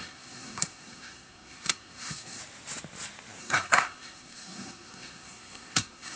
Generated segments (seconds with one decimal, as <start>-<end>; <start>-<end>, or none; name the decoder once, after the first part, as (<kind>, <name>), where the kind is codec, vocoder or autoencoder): 0.0-2.4 (codec, SNAC); 3.4-6.2